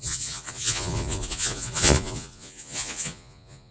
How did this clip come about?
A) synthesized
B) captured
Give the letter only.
A